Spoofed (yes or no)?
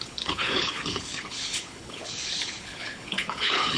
yes